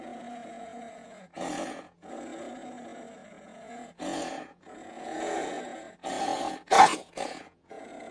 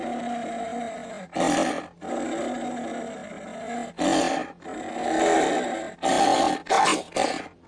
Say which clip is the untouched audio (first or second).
second